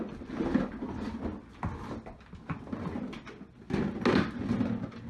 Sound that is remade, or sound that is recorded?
recorded